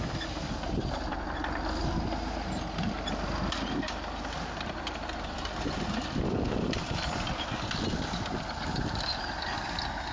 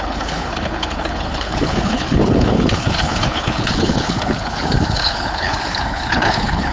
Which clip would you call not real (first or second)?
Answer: second